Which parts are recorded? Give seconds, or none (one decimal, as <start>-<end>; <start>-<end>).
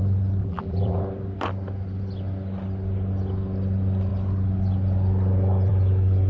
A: 0.0-0.4; 1.0-6.3